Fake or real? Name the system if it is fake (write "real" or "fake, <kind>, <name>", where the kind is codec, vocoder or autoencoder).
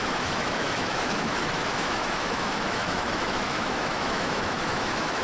fake, autoencoder, DAC-VAE